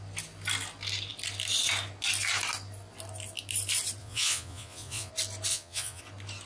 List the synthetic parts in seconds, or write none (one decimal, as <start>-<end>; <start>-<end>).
4.0-5.1; 5.5-6.0

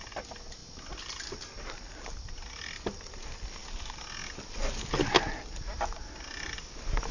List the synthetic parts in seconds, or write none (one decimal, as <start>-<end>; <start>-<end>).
none

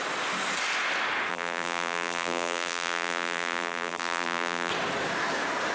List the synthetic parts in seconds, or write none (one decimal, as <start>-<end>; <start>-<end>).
1.3-4.7

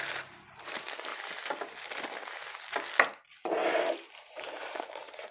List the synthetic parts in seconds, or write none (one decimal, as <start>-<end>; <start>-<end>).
0.0-1.1; 4.3-5.3

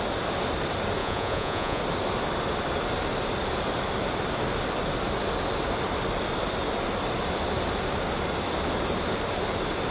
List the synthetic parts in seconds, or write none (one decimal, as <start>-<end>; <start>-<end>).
1.0-1.8

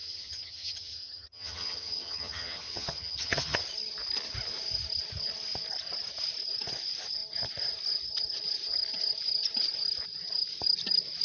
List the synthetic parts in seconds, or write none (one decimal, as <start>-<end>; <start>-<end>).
0.0-3.6

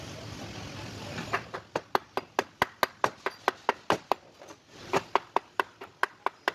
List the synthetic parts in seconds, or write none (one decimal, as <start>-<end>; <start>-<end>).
none